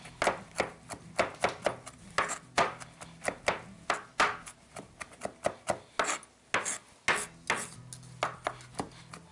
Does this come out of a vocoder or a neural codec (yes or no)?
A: no